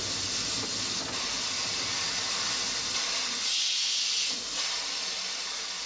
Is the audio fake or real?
real